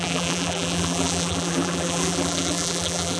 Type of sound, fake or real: fake